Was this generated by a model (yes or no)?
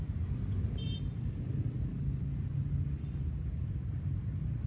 no